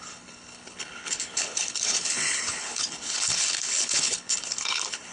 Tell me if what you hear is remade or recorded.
remade